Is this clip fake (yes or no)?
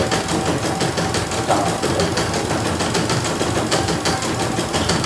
no